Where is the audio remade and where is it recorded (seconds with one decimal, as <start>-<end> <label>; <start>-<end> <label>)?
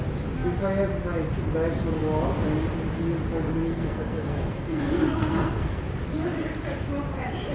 0.0-3.6 recorded; 3.6-5.8 remade; 5.8-7.5 recorded